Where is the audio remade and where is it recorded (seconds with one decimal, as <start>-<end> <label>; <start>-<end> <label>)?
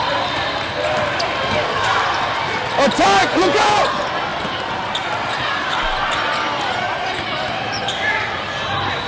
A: 0.0-3.2 recorded; 3.2-3.8 remade; 3.8-9.1 recorded